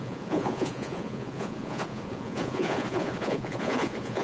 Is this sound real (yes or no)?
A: no